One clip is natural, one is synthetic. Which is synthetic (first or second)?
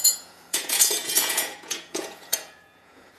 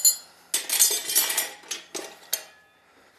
first